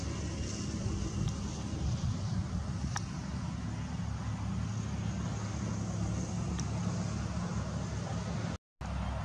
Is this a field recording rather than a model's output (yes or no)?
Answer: yes